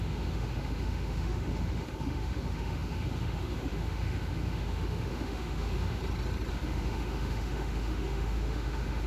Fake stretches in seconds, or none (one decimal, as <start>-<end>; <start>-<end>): 0.0-6.0; 6.5-9.1

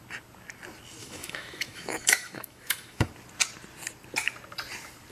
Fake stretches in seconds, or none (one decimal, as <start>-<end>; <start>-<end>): 1.0-3.1

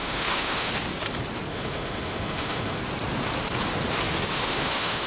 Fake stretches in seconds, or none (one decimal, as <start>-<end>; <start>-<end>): 0.0-0.7; 1.5-2.8; 4.3-5.1

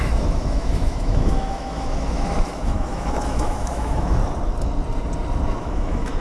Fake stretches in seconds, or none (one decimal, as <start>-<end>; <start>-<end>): 0.0-4.2; 5.6-6.2

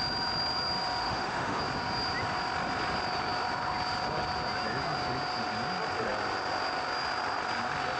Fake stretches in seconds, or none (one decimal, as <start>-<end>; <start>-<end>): 1.0-1.6

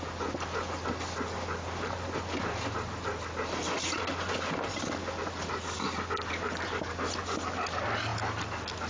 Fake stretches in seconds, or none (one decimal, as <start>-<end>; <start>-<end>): none

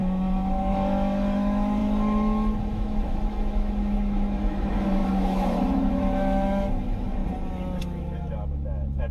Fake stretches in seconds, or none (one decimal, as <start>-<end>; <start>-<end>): 0.0-7.2; 7.8-9.1